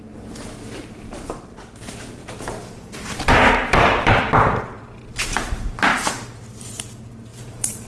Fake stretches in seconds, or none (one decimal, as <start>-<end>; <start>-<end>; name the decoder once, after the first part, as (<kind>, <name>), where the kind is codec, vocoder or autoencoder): 0.0-7.9 (vocoder, BigVGAN v2)

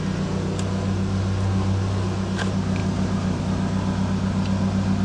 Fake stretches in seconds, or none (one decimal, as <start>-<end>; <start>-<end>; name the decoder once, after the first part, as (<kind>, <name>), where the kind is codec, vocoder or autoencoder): 2.8-3.4 (vocoder, BigVGAN v2)

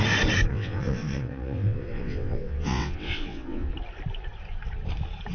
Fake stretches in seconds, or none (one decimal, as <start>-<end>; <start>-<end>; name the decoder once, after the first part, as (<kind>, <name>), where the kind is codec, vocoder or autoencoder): 0.5-3.7 (vocoder, WaveNeXt)

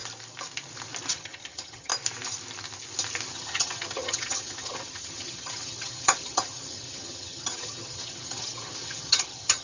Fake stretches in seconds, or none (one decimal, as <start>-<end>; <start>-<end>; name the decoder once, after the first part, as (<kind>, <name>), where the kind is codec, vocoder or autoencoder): 1.1-1.9 (vocoder, HiFi-GAN); 3.3-9.6

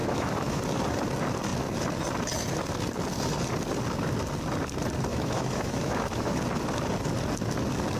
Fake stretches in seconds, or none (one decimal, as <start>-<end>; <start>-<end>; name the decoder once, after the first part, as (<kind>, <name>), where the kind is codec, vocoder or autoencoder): 0.0-0.6 (autoencoder, DAC-VAE); 5.1-6.4